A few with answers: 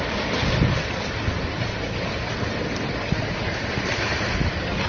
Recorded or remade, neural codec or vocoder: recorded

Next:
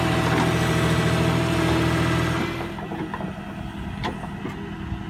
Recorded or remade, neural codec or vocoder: recorded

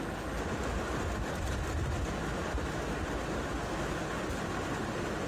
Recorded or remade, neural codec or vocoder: recorded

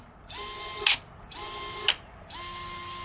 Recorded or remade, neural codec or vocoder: recorded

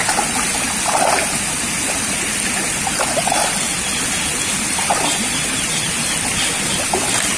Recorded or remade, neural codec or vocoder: recorded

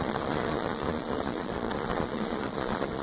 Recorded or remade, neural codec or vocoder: remade, vocoder, Vocos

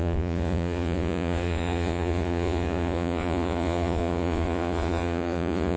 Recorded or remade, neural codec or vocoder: remade, vocoder, Vocos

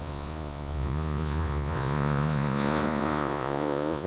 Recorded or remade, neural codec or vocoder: remade, vocoder, Vocos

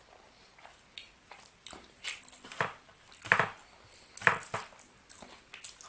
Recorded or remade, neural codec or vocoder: recorded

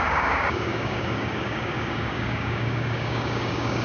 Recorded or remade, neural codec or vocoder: remade, codec, DAC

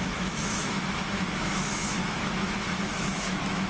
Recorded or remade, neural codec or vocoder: remade, autoencoder, DAC-VAE